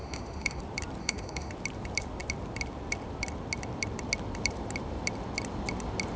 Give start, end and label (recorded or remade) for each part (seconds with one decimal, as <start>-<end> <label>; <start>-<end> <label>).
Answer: 0.0-0.6 remade; 0.6-1.0 recorded; 1.0-1.5 remade; 1.5-6.2 recorded